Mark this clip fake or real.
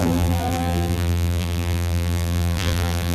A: fake